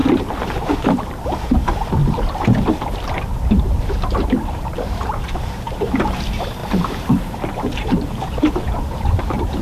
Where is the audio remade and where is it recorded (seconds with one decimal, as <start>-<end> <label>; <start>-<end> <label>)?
0.0-0.7 recorded; 0.7-2.0 remade; 2.0-3.6 recorded; 3.6-9.6 remade